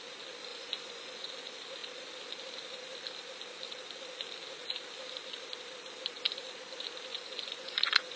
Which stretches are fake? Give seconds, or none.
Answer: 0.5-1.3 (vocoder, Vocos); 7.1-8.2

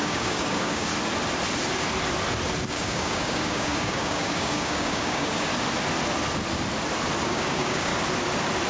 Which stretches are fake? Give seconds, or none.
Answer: 0.0-0.9 (codec, DAC); 2.7-5.5; 7.2-7.9

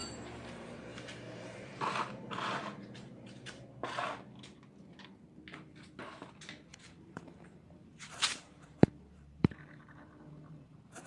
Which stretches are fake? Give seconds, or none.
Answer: 0.0-3.7 (vocoder, BigVGAN v2); 6.7-11.1

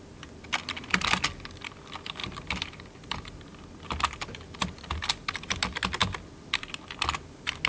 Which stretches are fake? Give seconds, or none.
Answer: 2.2-3.6 (vocoder, BigVGAN v2); 6.0-6.8

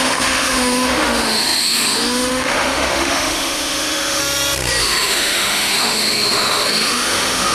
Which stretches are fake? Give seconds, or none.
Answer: 0.0-4.2 (autoencoder, DAC-VAE); 4.8-7.5